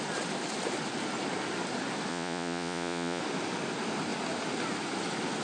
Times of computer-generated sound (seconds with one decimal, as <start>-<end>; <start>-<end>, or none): 2.1-3.2